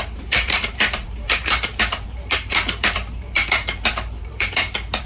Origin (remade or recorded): remade